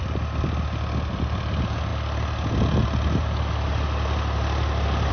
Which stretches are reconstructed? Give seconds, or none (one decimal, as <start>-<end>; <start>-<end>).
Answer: none